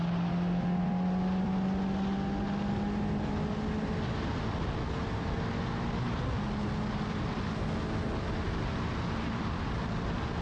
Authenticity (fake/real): real